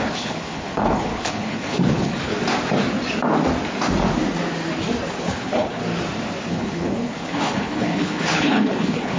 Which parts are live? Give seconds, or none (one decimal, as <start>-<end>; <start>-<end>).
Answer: 2.3-5.2; 5.8-6.5